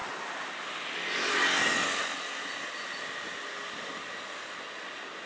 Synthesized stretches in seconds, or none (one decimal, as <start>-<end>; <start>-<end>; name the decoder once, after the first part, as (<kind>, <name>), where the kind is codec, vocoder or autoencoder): none